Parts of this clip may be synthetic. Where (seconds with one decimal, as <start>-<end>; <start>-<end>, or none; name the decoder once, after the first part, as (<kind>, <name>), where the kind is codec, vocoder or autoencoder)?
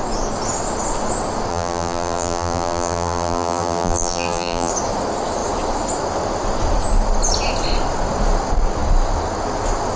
1.5-4.7 (vocoder, BigVGAN v2)